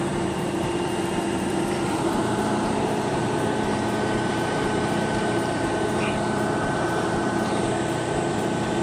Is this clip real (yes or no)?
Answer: no